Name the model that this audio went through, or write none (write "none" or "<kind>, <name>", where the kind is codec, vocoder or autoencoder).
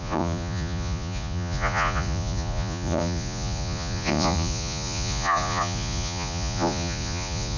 vocoder, Vocos